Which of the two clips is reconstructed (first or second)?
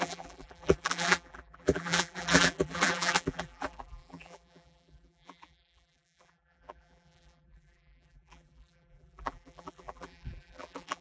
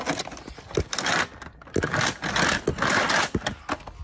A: first